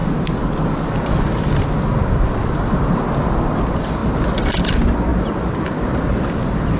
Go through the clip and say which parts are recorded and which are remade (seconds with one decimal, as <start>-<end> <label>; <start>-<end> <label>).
0.0-6.8 recorded